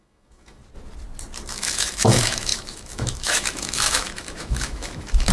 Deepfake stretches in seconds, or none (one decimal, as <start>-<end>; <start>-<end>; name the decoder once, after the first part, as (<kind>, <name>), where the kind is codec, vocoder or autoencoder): 0.0-0.6 (autoencoder, DAC-VAE); 1.5-5.3

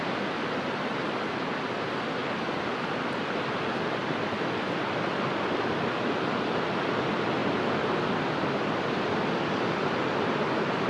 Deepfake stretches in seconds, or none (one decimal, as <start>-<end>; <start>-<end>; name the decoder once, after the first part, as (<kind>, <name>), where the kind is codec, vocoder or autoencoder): 2.2-3.3 (vocoder, BigVGAN v2); 4.0-4.8

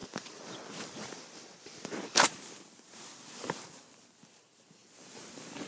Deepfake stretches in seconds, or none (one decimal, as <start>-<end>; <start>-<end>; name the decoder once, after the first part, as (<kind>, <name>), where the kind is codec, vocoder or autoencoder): 0.0-3.4 (vocoder, BigVGAN v2)

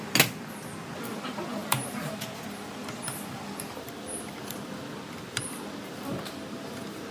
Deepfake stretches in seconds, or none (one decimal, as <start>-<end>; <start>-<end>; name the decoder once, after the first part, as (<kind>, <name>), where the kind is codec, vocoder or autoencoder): 1.6-2.2 (vocoder, BigVGAN v2)

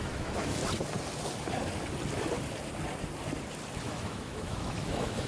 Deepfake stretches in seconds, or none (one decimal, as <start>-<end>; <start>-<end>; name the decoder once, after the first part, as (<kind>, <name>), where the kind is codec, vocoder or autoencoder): 0.0-0.6 (autoencoder, DAC-VAE); 3.8-5.3

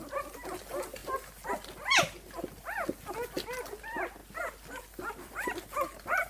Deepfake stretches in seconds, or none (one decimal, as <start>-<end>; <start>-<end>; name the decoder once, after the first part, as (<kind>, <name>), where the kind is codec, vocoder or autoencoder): none